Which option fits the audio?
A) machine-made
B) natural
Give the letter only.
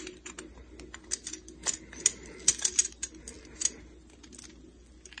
B